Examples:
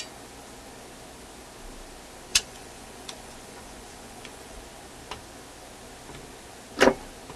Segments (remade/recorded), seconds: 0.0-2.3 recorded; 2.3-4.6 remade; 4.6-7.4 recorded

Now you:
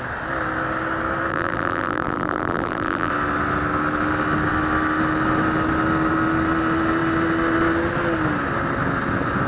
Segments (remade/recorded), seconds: 0.0-1.3 recorded; 1.3-3.1 remade; 3.1-9.5 recorded